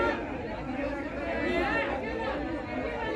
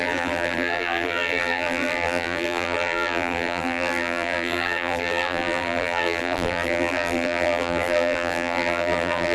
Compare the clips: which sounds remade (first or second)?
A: second